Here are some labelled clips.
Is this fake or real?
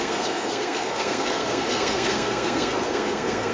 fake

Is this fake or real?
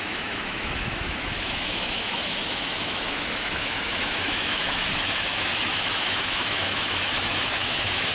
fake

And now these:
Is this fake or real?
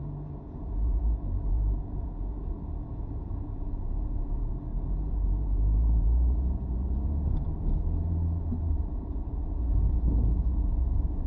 fake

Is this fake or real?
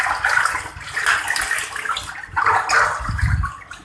real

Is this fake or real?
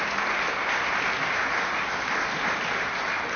real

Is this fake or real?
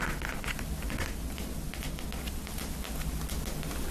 real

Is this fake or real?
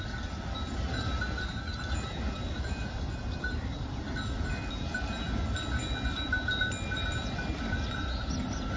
real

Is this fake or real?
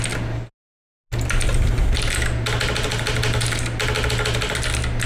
real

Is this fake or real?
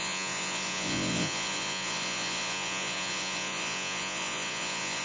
fake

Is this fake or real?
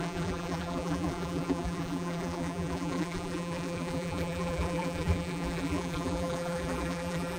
fake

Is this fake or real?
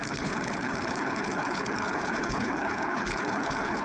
fake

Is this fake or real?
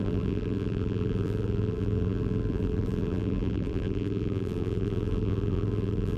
fake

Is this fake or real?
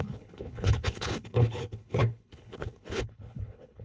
fake